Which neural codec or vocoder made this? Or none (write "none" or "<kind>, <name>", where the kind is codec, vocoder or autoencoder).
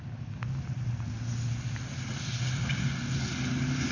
none